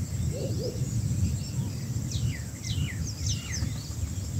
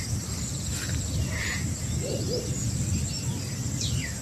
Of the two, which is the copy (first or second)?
first